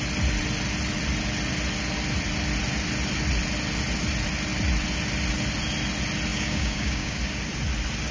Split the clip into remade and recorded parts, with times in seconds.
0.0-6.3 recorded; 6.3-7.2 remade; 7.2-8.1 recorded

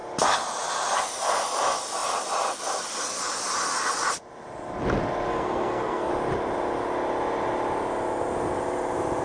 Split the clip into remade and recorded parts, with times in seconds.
0.0-5.3 recorded; 5.3-6.1 remade; 6.1-9.2 recorded